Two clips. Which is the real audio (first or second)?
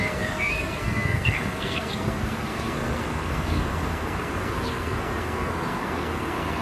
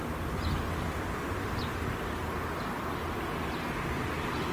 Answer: second